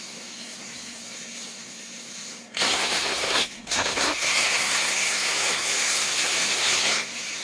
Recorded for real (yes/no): no